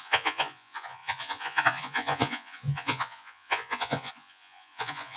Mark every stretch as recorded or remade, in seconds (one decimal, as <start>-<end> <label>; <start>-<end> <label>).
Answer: 0.0-5.2 remade